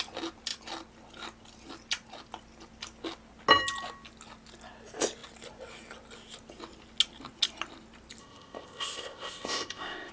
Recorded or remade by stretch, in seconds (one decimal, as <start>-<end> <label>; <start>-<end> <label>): 0.0-8.2 recorded; 8.2-10.1 remade

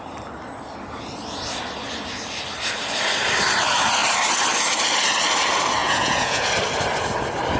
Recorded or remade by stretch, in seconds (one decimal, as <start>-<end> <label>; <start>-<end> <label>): 0.0-5.8 recorded; 5.8-6.5 remade; 6.5-7.6 recorded

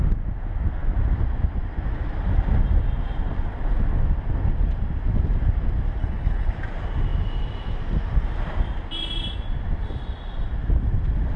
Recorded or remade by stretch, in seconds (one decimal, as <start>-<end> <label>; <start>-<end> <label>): 0.0-6.0 recorded; 6.0-6.5 remade; 6.5-11.4 recorded

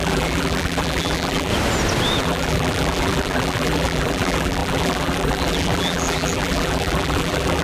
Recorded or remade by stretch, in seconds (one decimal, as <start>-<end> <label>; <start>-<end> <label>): 0.0-1.5 remade; 1.5-2.2 recorded; 2.2-7.6 remade